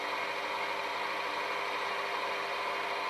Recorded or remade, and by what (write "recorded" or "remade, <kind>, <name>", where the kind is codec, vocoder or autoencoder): recorded